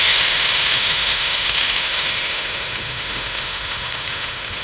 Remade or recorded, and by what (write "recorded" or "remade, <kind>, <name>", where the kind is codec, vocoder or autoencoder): remade, autoencoder, DAC-VAE